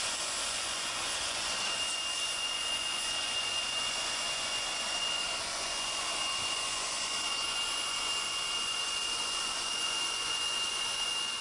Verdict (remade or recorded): remade